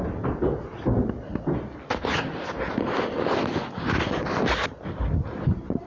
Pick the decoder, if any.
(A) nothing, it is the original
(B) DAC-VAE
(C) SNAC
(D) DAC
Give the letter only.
A